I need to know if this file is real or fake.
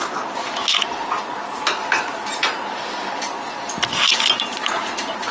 real